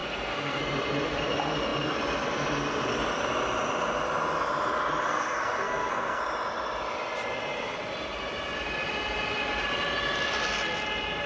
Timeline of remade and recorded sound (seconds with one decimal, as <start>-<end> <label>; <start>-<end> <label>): 0.0-0.6 remade; 0.6-5.1 recorded; 5.1-6.2 remade; 6.2-11.3 recorded